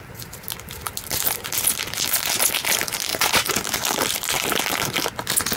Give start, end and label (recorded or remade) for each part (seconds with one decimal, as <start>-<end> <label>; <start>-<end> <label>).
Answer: 0.0-3.1 recorded; 3.1-4.6 remade; 4.6-5.6 recorded